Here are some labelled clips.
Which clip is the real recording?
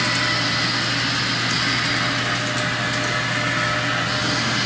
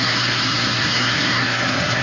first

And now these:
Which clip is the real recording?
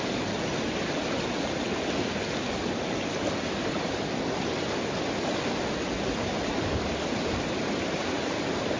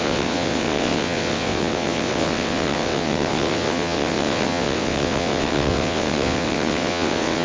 first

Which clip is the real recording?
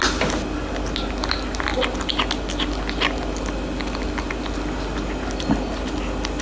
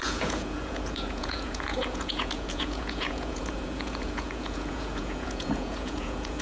first